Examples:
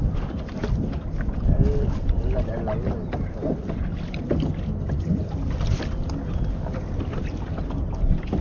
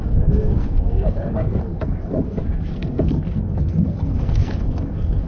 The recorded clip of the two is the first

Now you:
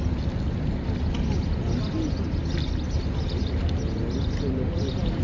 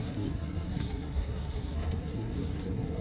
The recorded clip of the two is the first